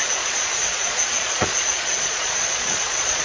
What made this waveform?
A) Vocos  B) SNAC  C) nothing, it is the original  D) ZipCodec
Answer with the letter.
A